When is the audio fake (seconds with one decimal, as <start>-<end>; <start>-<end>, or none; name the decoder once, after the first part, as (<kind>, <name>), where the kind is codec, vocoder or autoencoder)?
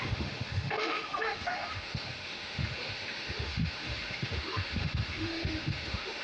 0.0-6.2 (autoencoder, DAC-VAE)